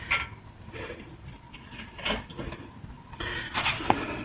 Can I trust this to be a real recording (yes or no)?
no